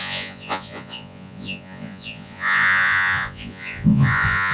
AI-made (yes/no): yes